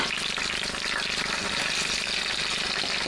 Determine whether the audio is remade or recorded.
recorded